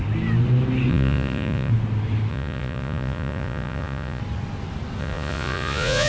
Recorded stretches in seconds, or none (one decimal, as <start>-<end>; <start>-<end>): 0.0-0.9; 1.7-2.3; 4.2-5.0